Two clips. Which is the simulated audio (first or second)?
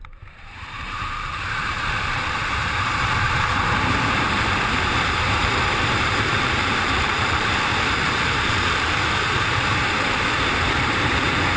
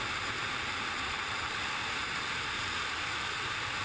first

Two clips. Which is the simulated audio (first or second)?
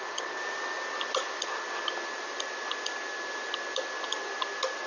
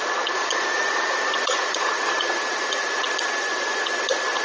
second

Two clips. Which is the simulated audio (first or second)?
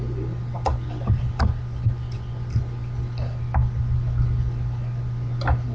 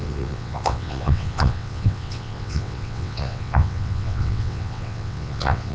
second